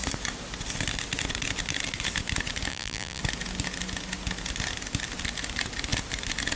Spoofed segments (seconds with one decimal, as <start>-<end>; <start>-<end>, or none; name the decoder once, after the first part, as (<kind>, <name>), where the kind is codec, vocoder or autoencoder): 2.7-3.2 (vocoder, BigVGAN v2)

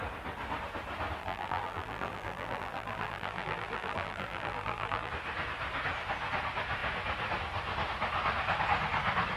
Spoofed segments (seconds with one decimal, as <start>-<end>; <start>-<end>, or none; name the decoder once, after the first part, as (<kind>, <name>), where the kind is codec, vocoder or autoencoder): 1.2-5.1 (vocoder, BigVGAN v2)

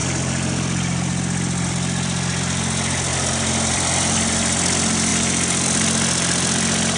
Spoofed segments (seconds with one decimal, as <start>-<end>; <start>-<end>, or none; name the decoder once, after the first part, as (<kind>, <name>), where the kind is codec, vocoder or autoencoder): 3.1-4.3 (vocoder, BigVGAN v2)